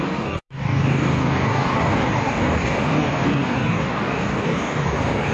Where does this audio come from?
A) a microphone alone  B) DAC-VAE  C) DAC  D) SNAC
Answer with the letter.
C